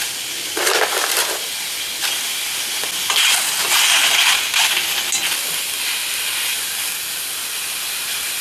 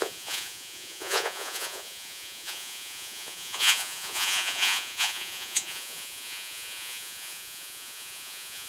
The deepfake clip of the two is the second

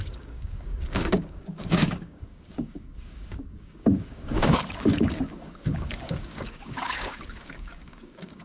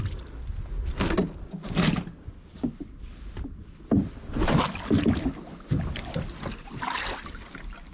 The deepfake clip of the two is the first